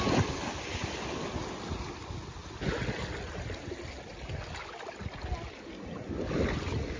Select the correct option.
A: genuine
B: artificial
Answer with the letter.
A